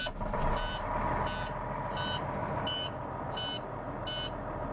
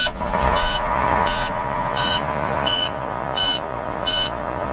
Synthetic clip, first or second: second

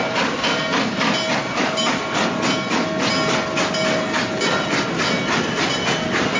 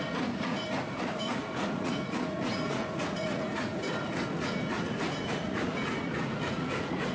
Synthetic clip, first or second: second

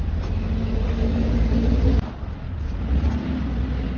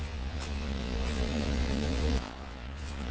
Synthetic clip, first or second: second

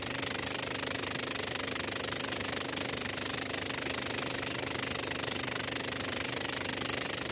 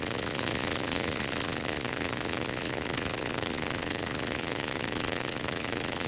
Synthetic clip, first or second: second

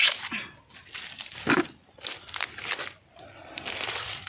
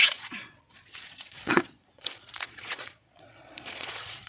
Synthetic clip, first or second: second